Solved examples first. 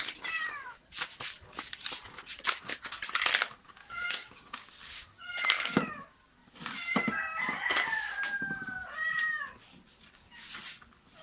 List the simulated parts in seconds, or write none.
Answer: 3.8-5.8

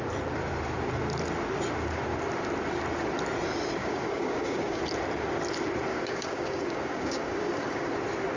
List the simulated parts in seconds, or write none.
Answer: 3.8-4.8; 5.9-7.9

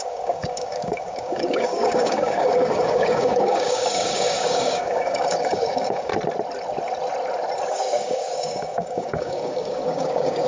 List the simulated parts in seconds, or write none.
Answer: 0.0-6.1; 7.7-10.5

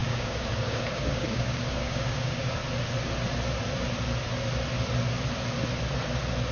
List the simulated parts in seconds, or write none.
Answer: 0.0-2.6